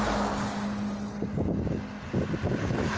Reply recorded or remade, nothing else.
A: recorded